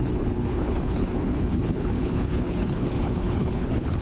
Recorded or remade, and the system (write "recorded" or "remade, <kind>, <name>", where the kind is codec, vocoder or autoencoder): remade, codec, HILCodec